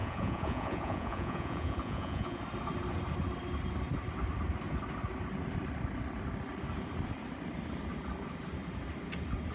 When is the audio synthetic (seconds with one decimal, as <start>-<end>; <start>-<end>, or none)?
0.0-2.4